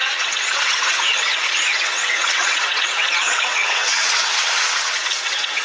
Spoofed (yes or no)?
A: yes